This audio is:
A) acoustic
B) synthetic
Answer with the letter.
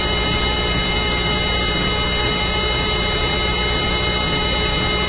A